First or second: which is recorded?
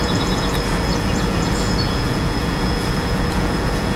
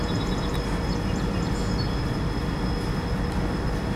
second